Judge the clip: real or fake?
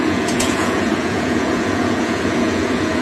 fake